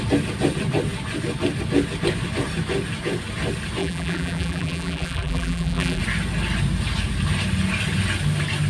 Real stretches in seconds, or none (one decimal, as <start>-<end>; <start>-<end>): 0.0-3.8; 6.0-8.7